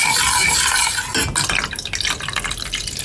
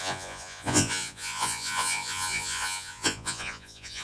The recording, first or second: first